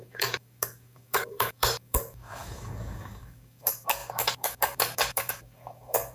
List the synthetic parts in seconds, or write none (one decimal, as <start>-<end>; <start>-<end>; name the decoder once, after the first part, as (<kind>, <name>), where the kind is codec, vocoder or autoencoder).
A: 0.0-6.1 (codec, DAC)